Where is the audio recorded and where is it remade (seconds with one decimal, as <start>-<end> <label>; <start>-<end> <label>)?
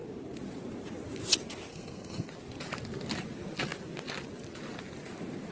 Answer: 0.0-1.7 recorded; 1.7-2.3 remade; 2.3-5.5 recorded